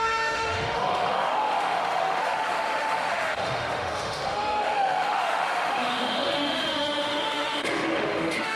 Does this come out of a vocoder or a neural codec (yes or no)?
yes